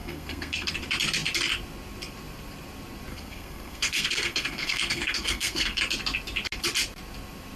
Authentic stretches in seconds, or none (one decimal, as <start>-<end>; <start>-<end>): 0.7-3.1; 5.8-7.6